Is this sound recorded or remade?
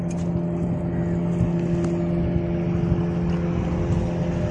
recorded